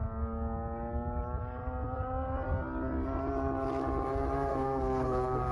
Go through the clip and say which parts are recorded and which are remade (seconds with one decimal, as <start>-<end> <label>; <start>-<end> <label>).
0.0-4.5 recorded; 4.5-5.5 remade